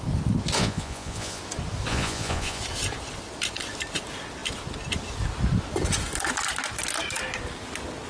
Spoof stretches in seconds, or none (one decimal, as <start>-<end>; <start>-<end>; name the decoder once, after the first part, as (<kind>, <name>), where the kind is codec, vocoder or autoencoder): 0.6-1.4 (vocoder, Vocos); 1.9-2.6